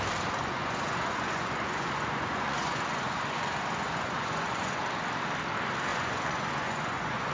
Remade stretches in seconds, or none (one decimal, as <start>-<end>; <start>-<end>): 0.4-4.8; 5.9-7.3